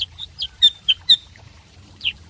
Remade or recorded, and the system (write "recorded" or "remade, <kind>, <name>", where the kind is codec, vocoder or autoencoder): remade, vocoder, BigVGAN v2